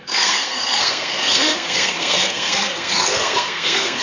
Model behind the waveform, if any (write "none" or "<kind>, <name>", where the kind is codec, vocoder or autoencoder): codec, SNAC